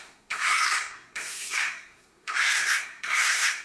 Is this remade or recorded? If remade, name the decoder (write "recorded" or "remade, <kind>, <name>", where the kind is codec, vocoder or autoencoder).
remade, codec, SNAC